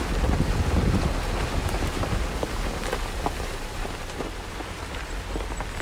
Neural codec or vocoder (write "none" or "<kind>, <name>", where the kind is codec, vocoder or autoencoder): none